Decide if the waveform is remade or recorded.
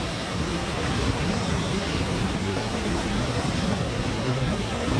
remade